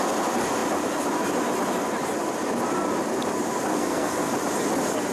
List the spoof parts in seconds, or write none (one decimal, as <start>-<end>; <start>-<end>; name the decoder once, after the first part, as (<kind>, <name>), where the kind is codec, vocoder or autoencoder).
3.7-4.3 (codec, SNAC)